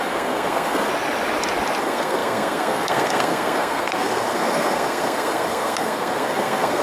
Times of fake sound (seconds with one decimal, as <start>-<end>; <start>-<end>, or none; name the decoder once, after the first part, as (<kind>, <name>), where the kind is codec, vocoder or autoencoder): 0.0-0.9 (codec, SNAC); 1.8-6.8